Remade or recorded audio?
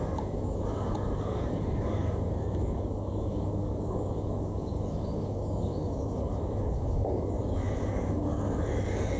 remade